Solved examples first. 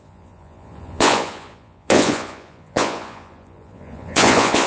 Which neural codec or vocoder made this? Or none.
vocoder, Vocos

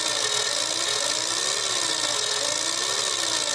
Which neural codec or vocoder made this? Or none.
none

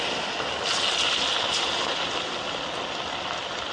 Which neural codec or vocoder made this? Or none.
none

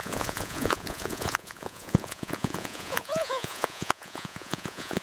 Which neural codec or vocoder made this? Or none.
vocoder, Vocos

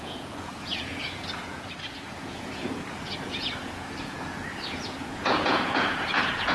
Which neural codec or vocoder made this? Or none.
vocoder, Vocos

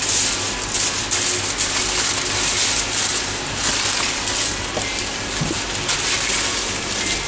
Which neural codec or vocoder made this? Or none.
none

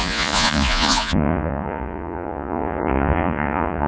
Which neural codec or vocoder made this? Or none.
vocoder, Vocos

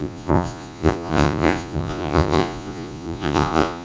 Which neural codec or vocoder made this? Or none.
vocoder, Vocos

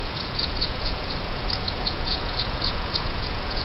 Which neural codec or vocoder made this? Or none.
vocoder, Vocos